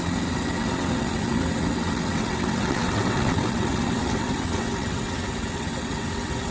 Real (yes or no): no